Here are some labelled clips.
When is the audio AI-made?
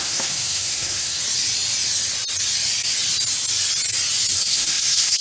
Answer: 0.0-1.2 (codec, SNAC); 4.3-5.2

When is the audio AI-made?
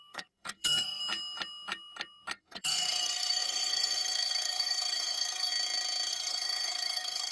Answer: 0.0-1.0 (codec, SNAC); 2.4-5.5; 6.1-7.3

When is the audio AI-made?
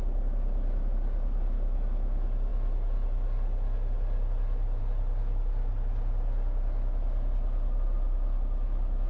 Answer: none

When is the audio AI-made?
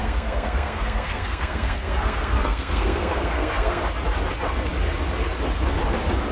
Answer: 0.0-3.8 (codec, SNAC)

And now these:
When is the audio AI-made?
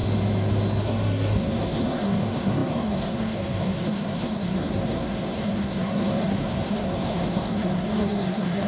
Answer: 0.8-8.7 (codec, SNAC)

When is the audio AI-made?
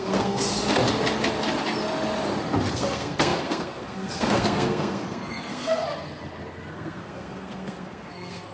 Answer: 0.0-0.5 (codec, SNAC); 2.7-5.8; 6.7-8.5